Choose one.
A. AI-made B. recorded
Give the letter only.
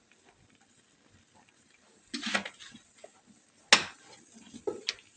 B